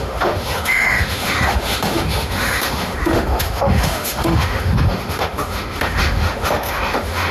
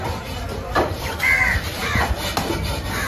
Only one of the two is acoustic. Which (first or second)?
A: second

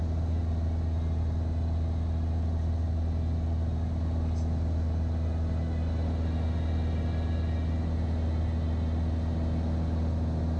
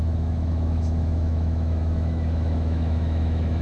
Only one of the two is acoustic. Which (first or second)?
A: first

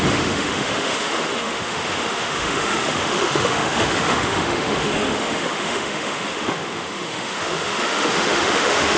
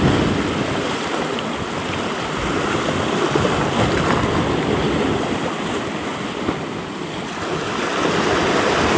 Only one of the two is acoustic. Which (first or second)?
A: second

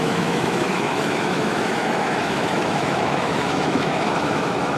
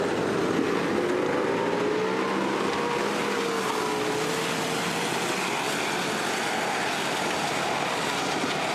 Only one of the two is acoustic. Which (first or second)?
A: second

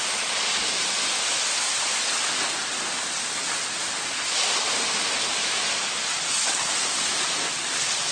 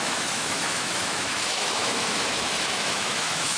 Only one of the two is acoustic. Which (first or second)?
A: first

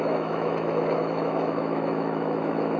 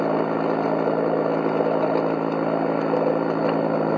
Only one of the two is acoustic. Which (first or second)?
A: second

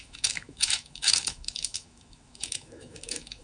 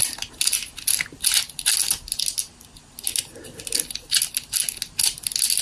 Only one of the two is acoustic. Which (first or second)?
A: second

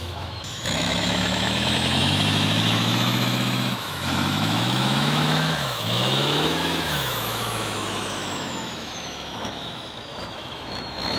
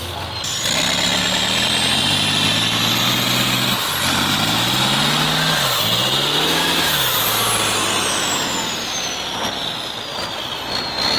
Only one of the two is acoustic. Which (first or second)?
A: second